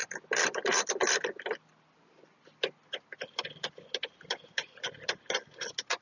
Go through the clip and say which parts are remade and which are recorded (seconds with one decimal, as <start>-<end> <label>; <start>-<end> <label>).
0.0-6.0 recorded